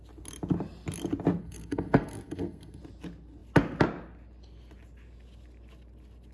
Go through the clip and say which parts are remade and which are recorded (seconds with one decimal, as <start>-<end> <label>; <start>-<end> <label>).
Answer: 0.0-1.4 recorded; 1.4-2.8 remade; 2.8-6.3 recorded